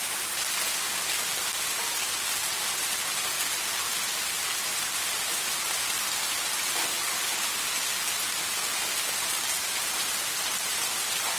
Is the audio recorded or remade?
recorded